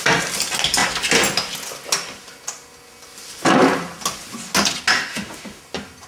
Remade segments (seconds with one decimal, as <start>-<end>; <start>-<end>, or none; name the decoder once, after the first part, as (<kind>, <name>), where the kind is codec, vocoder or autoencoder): 5.1-5.6 (autoencoder, DAC-VAE)